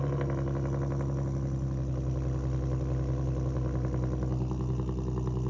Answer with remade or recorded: recorded